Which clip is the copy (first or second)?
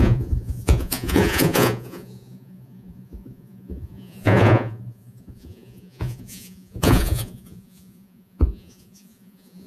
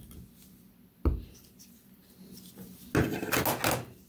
first